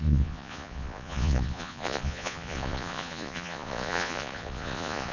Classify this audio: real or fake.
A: fake